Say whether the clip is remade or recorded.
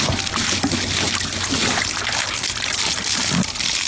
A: recorded